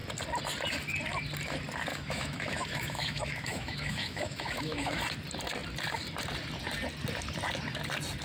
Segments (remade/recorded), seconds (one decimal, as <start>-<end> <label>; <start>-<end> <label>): 0.0-1.9 recorded; 1.9-5.0 remade; 5.0-8.2 recorded